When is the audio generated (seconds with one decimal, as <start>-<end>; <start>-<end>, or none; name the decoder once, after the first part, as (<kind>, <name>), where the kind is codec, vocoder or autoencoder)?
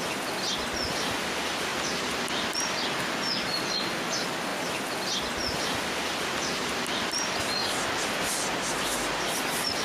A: none